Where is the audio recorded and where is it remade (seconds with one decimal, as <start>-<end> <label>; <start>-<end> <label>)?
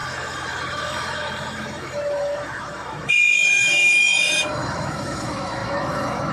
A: 0.0-6.3 remade